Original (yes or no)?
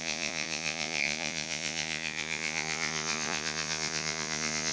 no